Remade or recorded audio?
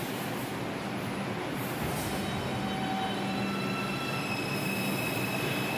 recorded